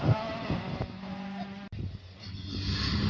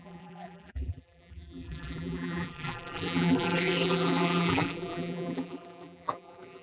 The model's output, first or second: second